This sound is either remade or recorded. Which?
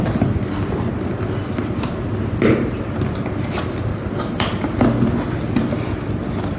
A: recorded